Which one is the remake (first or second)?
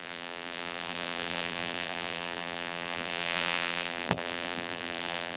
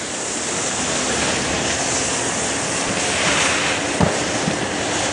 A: first